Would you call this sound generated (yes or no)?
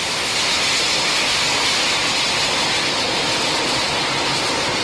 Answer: no